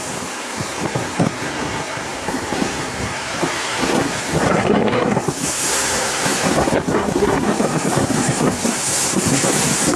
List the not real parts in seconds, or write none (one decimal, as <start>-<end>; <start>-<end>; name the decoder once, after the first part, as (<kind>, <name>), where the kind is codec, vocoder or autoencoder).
0.0-10.0 (codec, SNAC)